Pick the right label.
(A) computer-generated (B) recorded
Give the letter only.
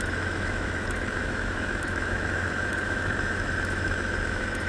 A